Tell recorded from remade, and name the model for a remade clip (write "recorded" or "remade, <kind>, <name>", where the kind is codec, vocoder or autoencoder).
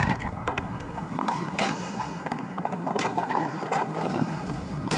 remade, codec, SNAC